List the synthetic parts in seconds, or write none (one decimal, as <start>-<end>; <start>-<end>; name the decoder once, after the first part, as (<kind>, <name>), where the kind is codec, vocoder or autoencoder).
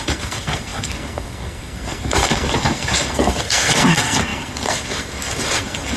0.0-6.0 (codec, SNAC)